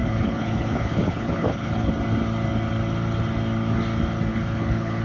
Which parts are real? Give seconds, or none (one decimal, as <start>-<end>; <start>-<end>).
1.9-4.3